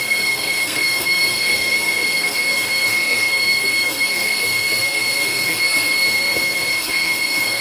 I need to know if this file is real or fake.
fake